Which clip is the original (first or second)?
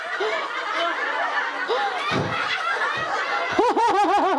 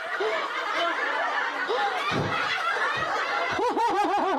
first